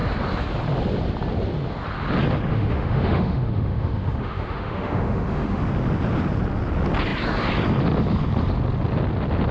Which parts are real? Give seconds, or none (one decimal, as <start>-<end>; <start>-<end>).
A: 0.0-2.5; 5.6-9.5